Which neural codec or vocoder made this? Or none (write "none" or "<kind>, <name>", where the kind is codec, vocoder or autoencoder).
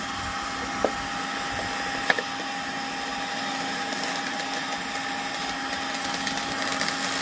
none